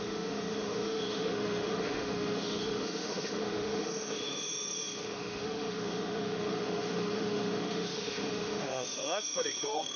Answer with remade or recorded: remade